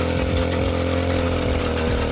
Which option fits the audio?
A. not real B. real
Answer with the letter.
B